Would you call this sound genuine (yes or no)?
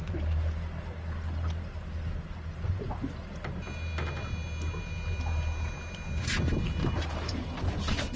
yes